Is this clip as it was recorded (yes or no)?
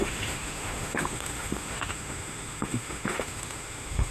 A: no